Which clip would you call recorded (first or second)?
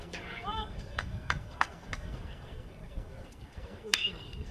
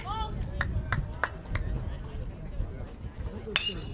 second